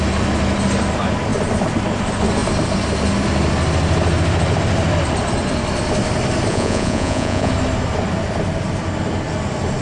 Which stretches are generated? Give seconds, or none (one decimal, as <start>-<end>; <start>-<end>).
6.5-7.5